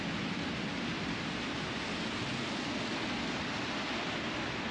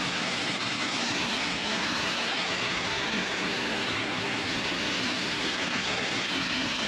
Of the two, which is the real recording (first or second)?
first